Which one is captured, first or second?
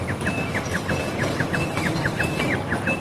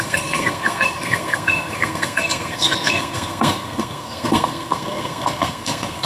first